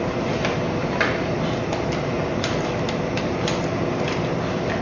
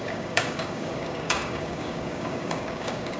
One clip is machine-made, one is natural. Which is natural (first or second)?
first